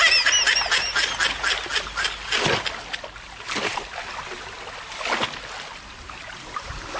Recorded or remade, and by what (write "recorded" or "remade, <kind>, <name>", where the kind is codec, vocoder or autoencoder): recorded